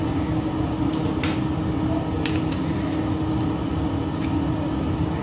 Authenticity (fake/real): real